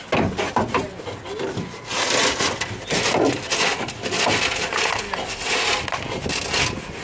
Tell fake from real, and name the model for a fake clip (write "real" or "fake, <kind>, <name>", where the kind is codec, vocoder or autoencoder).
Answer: real